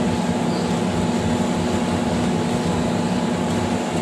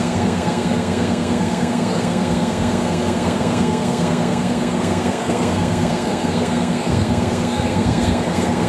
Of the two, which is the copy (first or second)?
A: second